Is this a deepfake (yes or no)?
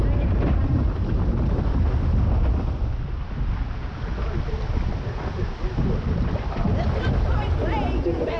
no